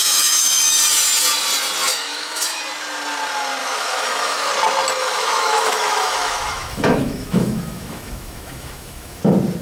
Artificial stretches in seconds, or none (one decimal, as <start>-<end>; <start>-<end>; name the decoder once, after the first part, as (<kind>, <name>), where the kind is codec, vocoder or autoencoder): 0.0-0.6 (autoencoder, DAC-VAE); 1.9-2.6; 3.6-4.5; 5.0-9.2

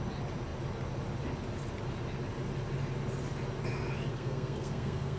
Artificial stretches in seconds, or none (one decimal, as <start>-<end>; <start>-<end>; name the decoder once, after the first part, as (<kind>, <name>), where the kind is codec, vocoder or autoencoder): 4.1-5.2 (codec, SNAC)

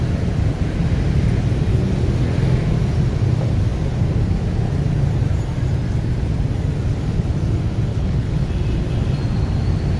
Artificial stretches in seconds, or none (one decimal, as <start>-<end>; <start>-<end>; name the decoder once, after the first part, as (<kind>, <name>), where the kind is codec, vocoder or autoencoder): 7.9-8.5 (codec, HILCodec)

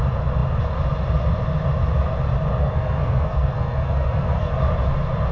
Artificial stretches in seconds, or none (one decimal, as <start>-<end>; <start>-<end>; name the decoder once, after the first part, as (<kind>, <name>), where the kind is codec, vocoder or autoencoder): 2.6-4.5 (codec, SNAC)